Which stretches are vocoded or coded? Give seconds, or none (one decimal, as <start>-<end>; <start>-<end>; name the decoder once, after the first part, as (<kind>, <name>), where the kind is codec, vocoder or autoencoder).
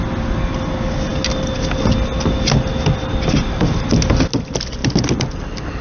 none